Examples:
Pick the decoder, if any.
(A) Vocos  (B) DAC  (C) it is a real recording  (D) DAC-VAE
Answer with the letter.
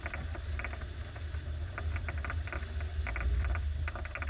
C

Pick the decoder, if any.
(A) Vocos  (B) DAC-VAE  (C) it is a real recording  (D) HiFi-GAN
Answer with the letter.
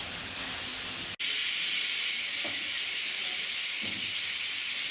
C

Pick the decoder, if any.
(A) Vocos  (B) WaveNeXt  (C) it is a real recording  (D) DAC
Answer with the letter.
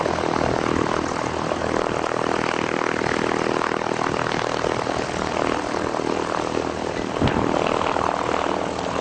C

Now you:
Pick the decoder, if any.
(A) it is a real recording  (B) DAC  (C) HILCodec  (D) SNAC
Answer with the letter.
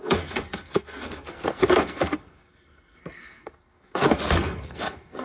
D